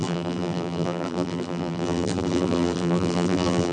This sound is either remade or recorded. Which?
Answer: remade